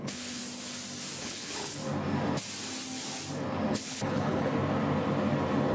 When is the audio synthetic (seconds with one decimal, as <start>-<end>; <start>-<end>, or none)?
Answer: 0.0-0.4; 1.2-1.8; 3.7-4.5